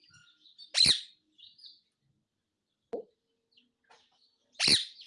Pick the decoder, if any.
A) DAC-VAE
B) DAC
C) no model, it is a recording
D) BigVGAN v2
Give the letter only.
C